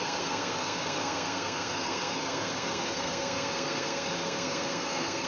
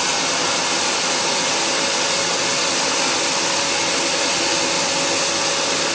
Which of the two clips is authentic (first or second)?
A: second